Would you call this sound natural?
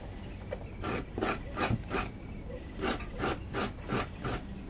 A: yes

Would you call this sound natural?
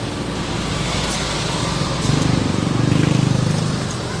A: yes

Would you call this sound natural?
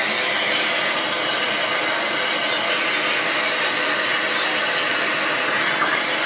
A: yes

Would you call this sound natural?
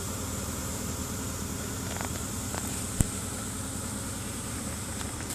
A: no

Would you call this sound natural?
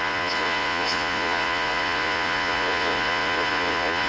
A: no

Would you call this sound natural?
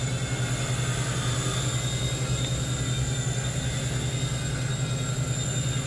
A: yes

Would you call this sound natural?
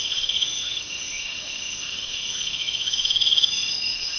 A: no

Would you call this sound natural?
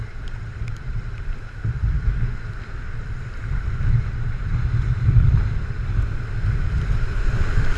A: yes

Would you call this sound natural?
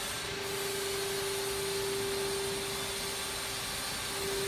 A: yes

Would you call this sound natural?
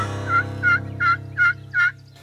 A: yes